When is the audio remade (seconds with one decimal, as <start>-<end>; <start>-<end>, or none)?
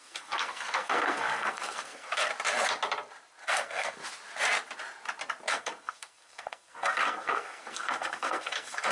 0.0-2.3; 3.4-4.0; 5.5-8.9